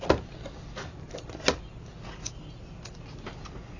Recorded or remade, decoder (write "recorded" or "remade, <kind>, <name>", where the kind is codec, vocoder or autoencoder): recorded